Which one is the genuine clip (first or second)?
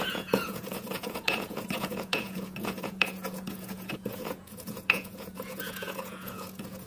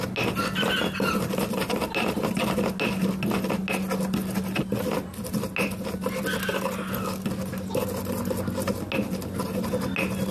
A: second